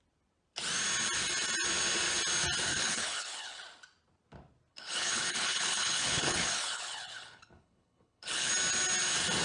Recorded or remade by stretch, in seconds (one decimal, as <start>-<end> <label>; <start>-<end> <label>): 0.0-2.7 recorded; 2.7-3.6 remade; 3.6-4.7 recorded; 4.7-8.5 remade; 8.5-9.4 recorded

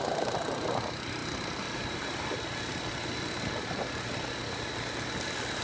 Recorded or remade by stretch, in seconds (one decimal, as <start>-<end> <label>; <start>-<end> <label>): 0.0-5.6 recorded

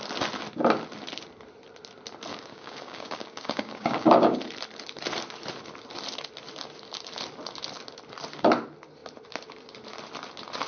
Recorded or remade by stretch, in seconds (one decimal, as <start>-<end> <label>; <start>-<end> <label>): 0.0-2.3 recorded; 2.3-4.4 remade; 4.4-10.7 recorded

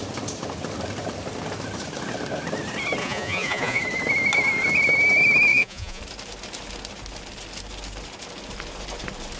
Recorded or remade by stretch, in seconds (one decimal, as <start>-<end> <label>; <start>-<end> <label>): 0.0-3.0 recorded; 3.0-3.8 remade; 3.8-5.5 recorded; 5.5-6.0 remade; 6.0-9.4 recorded

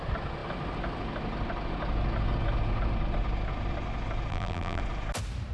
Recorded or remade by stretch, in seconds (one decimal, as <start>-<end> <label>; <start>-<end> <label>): 0.0-4.3 recorded; 4.3-4.8 remade; 4.8-5.5 recorded